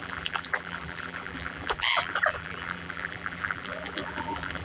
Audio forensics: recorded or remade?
remade